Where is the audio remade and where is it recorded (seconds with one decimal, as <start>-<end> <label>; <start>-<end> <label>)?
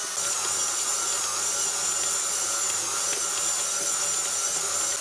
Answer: 0.0-5.0 recorded